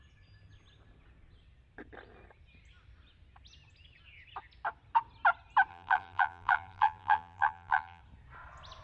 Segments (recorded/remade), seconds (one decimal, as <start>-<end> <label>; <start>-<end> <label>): 0.0-5.7 recorded; 5.7-8.0 remade; 8.0-8.8 recorded